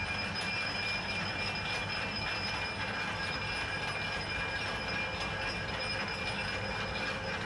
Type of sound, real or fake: real